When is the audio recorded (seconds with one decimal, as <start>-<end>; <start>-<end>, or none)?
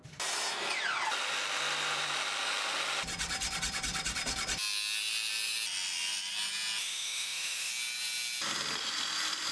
0.0-6.8; 7.7-9.5